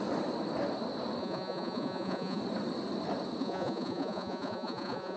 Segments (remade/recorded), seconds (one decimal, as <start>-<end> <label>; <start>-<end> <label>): 0.0-1.2 recorded; 1.2-2.4 remade; 2.4-3.4 recorded; 3.4-5.2 remade

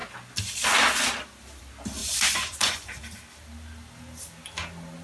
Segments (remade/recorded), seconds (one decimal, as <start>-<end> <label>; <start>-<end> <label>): 0.0-2.0 recorded; 2.0-3.0 remade; 3.0-5.0 recorded

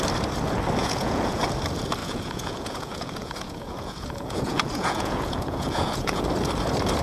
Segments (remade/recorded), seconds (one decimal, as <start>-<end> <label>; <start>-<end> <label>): 0.0-0.8 recorded; 0.8-1.4 remade; 1.4-2.0 recorded; 2.0-6.2 remade; 6.2-7.0 recorded